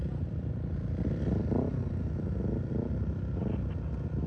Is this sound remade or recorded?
recorded